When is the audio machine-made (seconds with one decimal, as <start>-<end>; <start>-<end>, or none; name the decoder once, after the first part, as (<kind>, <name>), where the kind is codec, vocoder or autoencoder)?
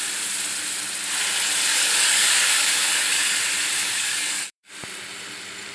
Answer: 1.7-3.4 (codec, DAC); 3.8-4.7